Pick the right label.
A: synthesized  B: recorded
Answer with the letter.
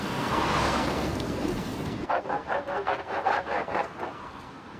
A